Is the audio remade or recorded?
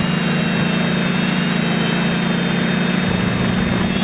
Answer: recorded